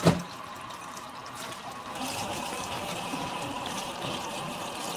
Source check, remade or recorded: remade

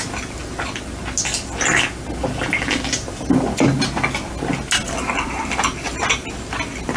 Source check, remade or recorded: recorded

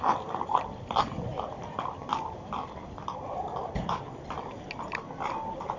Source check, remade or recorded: recorded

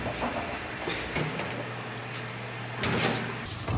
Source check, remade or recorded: recorded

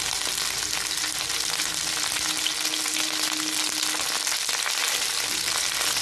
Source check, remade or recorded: recorded